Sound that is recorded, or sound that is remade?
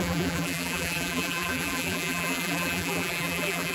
remade